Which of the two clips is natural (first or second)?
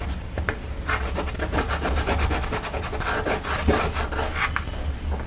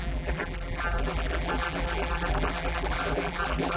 first